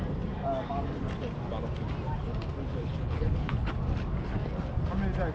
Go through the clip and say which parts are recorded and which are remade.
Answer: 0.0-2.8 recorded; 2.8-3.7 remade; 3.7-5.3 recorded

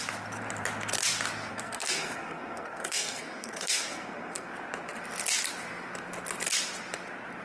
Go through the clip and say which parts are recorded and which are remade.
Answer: 0.0-1.5 recorded; 1.5-4.5 remade; 4.5-7.4 recorded